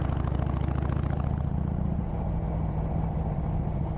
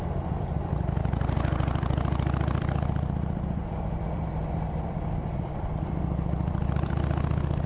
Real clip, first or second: first